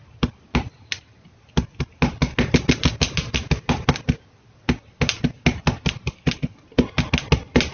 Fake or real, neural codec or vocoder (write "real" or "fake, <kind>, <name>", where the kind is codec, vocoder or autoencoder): real